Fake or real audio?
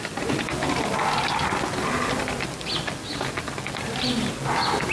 real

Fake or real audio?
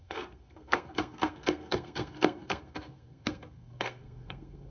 fake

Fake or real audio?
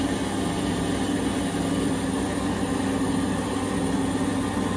real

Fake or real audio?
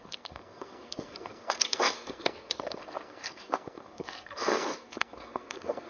fake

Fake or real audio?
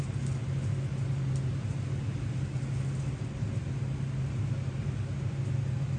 real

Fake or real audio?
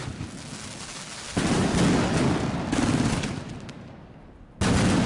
real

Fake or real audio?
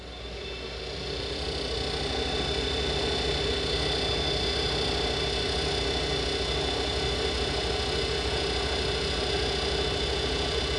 real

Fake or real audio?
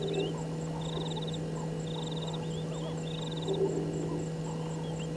real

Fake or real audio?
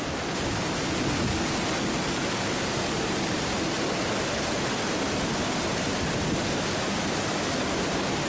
real